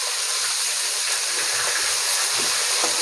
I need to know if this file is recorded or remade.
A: recorded